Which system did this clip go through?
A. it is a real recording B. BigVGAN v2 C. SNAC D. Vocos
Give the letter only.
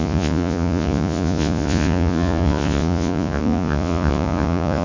D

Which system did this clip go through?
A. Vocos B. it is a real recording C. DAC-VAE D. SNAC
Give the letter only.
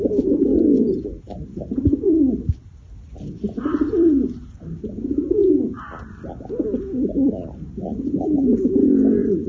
B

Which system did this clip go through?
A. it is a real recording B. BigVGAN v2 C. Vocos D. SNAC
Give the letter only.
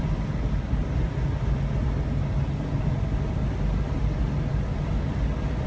A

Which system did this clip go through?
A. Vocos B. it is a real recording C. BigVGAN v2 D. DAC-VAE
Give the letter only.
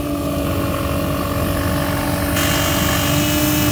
B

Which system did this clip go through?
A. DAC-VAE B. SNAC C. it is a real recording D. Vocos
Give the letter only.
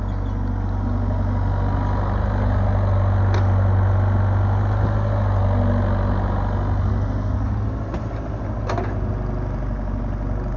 C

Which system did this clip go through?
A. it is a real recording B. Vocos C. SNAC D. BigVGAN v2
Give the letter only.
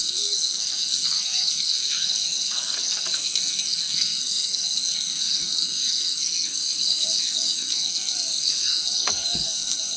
C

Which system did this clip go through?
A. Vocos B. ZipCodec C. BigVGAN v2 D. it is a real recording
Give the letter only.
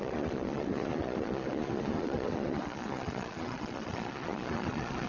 A